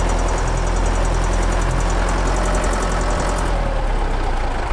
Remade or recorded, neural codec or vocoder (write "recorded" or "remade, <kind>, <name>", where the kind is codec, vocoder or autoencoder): recorded